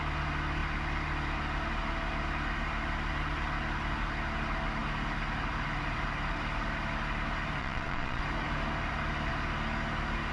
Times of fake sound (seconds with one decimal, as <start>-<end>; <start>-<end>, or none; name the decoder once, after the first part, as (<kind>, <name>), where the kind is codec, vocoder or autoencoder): 7.6-8.2 (vocoder, Vocos)